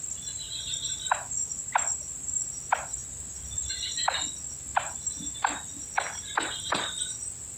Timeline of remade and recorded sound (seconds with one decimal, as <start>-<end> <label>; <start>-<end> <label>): 0.0-7.6 recorded

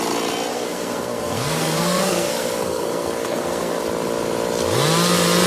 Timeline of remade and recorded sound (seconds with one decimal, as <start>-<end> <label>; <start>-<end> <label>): 0.0-0.5 recorded; 0.5-3.8 remade; 3.8-5.5 recorded

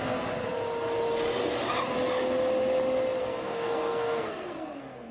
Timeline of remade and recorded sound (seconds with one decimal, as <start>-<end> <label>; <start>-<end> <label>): 0.0-3.2 recorded; 3.2-5.1 remade

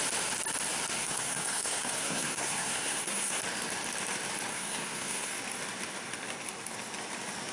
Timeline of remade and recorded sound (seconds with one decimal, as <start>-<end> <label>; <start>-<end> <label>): 0.0-1.0 recorded; 1.0-3.4 remade; 3.4-4.5 recorded; 4.5-5.3 remade; 5.3-7.5 recorded

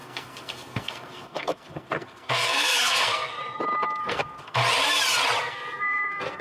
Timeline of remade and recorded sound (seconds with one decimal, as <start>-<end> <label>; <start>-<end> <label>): 0.0-3.4 remade; 3.4-4.0 recorded; 4.0-4.6 remade; 4.6-5.4 recorded; 5.4-6.4 remade